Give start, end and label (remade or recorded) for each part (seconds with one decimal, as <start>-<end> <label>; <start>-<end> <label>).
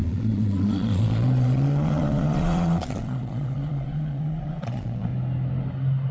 0.0-5.1 remade; 5.1-6.1 recorded